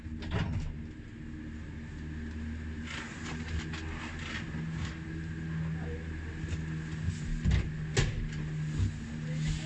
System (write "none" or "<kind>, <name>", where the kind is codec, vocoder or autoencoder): none